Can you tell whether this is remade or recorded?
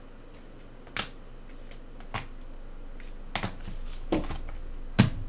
recorded